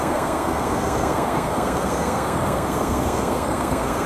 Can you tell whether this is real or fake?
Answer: fake